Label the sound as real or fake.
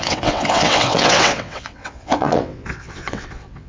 fake